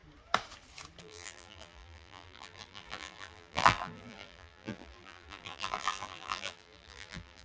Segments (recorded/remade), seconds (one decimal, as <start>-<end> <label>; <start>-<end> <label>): 0.0-1.0 recorded; 1.0-7.4 remade